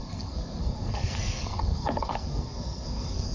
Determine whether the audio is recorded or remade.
remade